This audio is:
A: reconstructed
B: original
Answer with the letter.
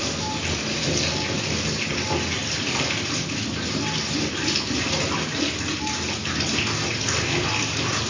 B